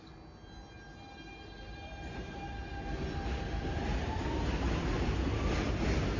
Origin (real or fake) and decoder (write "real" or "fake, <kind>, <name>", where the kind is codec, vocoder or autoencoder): real